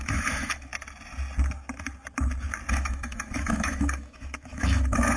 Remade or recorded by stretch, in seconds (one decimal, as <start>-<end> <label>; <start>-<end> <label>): 0.0-0.7 remade; 0.7-2.7 recorded; 2.7-5.2 remade